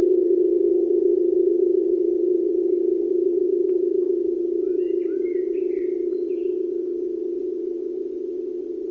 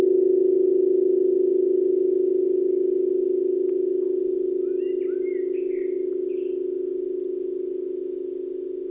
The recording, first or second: second